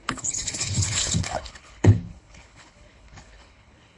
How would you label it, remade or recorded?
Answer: remade